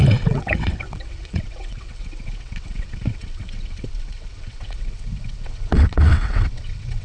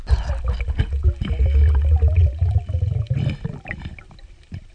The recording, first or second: second